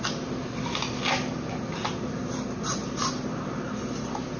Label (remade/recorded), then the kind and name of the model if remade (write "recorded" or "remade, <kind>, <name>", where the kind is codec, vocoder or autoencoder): recorded